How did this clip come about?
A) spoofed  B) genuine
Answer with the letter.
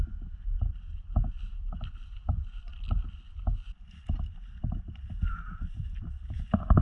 B